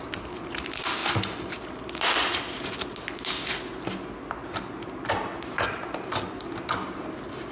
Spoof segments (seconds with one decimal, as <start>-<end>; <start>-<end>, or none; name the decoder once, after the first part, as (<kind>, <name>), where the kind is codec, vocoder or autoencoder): none